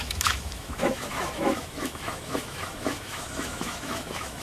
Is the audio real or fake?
fake